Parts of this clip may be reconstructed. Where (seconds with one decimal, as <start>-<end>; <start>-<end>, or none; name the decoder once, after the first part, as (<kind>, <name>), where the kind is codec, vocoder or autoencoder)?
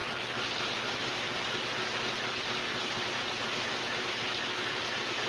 none